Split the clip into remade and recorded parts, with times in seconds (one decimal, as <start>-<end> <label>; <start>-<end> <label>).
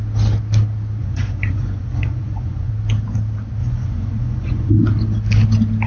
0.0-1.0 recorded; 1.0-2.7 remade; 2.7-3.6 recorded; 3.6-4.7 remade; 4.7-5.9 recorded